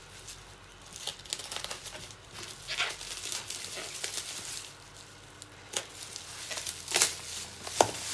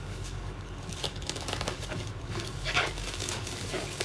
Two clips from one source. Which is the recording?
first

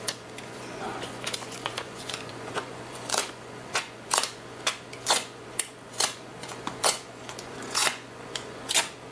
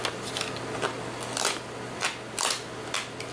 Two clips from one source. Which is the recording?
second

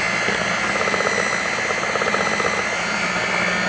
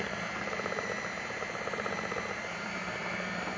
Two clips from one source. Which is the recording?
first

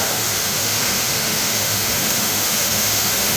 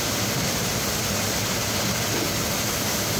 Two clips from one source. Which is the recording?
second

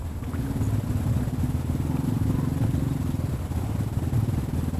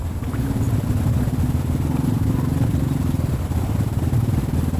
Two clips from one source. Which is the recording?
first